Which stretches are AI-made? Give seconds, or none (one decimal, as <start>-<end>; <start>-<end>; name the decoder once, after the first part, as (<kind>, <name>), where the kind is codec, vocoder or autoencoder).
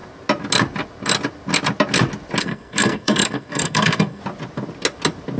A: 2.4-4.2 (codec, SNAC)